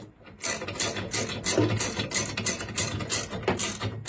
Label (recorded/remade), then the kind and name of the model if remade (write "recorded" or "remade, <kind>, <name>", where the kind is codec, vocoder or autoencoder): recorded